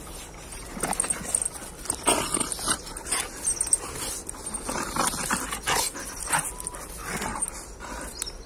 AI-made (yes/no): no